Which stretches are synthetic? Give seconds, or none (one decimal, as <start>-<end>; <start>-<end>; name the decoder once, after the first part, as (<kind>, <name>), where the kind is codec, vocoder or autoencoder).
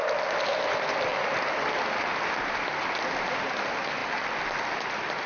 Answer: none